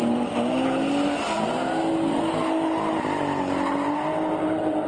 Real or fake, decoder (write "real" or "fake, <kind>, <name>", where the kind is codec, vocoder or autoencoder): real